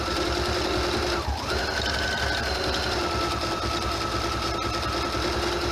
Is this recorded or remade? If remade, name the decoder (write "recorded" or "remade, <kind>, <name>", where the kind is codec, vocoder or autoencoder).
recorded